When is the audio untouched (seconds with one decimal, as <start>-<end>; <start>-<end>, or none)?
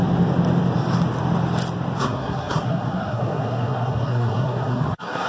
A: 0.0-2.0